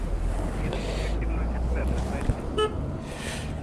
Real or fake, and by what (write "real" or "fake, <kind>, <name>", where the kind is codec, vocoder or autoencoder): real